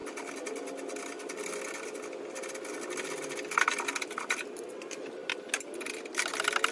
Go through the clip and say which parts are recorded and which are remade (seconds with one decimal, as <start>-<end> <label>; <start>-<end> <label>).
0.0-6.7 recorded